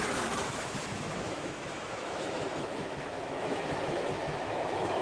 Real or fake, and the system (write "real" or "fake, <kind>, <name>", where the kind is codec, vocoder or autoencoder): fake, autoencoder, DAC-VAE